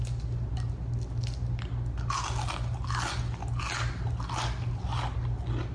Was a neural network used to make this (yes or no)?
no